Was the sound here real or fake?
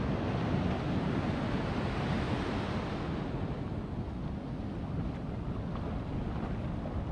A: real